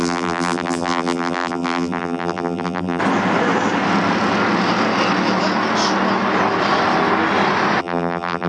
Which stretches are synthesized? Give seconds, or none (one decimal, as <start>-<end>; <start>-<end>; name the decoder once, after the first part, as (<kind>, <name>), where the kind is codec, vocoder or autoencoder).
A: 0.0-3.0 (vocoder, BigVGAN v2); 7.8-8.5